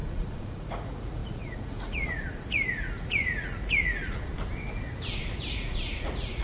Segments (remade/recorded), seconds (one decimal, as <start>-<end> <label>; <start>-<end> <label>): 0.0-4.3 remade; 4.3-5.5 recorded; 5.5-6.4 remade